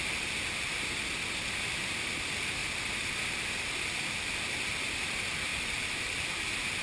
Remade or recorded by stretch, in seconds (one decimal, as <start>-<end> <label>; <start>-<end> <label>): 0.0-5.5 recorded; 5.5-6.8 remade